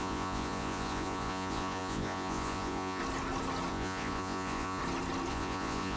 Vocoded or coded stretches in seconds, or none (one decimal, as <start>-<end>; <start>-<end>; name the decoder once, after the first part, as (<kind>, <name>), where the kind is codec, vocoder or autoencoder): 0.0-3.0 (vocoder, Vocos); 3.7-4.8; 5.3-6.0